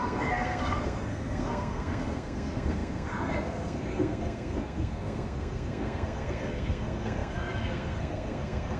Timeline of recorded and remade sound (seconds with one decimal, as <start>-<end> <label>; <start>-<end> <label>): 0.0-8.8 remade